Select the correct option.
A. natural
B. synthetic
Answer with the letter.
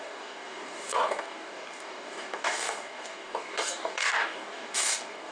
B